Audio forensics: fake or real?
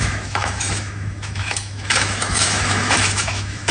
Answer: fake